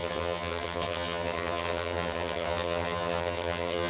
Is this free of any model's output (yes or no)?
no